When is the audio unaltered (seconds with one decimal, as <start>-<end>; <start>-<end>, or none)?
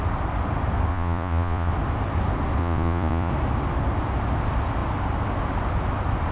0.0-0.9; 1.7-2.6; 3.3-6.3